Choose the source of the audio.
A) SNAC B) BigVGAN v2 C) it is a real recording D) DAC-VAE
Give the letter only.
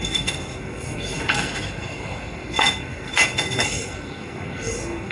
A